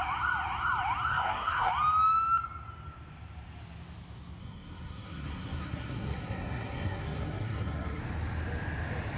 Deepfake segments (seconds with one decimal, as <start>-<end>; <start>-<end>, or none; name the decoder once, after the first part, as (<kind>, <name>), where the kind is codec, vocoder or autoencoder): 1.1-1.7 (codec, SNAC); 4.4-8.0